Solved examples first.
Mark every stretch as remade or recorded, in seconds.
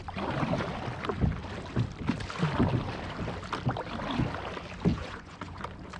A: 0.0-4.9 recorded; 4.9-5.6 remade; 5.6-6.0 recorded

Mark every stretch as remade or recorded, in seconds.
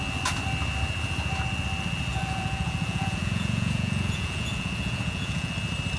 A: 0.0-2.1 recorded; 2.1-5.5 remade; 5.5-6.0 recorded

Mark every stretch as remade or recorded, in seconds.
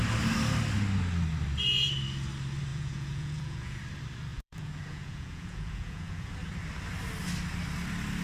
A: 0.0-2.7 recorded; 2.7-3.8 remade; 3.8-4.3 recorded; 4.3-6.3 remade; 6.3-8.2 recorded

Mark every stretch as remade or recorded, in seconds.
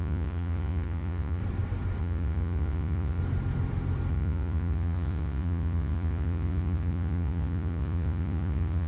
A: 0.0-1.4 remade; 1.4-2.0 recorded; 2.0-3.2 remade; 3.2-4.1 recorded; 4.1-8.9 remade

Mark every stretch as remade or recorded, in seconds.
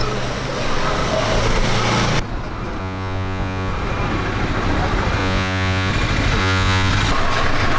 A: 0.0-2.8 recorded; 2.8-3.7 remade; 3.7-5.2 recorded; 5.2-5.9 remade; 5.9-6.4 recorded; 6.4-6.9 remade; 6.9-7.8 recorded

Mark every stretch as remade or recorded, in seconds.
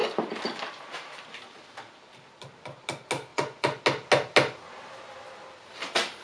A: 0.0-3.3 recorded; 3.3-3.8 remade; 3.8-6.2 recorded